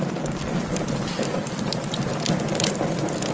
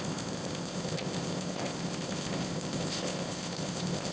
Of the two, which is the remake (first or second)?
second